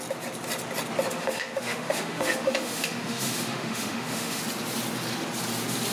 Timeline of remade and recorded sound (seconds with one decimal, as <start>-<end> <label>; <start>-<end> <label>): 0.0-1.1 recorded; 1.1-4.4 remade; 4.4-5.9 recorded